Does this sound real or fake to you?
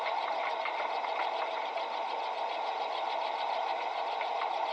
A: real